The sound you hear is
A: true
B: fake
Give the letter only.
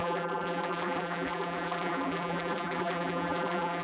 B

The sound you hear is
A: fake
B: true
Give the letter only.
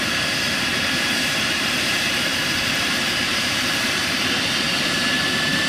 A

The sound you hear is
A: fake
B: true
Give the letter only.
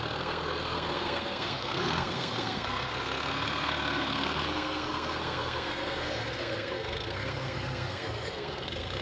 A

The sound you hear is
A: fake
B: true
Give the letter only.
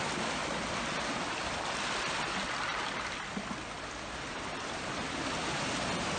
B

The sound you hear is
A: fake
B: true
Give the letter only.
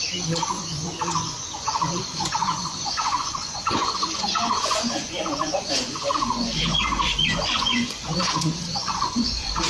A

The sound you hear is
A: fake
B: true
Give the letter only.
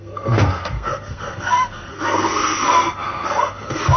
A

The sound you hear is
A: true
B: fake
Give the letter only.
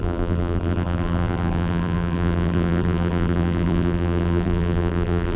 B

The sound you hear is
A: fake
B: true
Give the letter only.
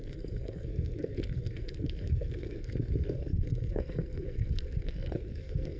A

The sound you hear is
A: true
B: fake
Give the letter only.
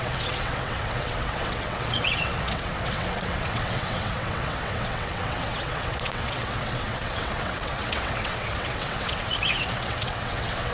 B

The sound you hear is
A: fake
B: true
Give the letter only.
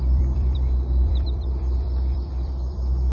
A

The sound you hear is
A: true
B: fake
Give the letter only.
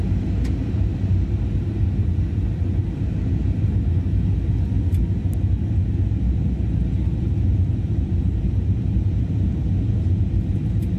A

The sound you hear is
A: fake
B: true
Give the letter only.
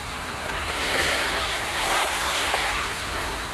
A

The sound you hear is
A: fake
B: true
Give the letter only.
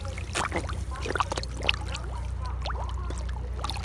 B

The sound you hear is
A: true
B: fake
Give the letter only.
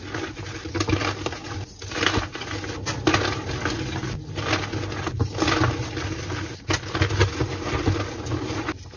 A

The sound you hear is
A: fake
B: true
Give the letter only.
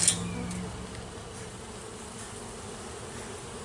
B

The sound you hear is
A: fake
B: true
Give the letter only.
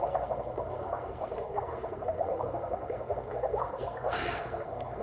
A